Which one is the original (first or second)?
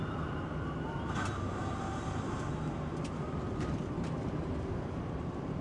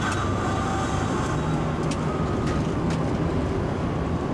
second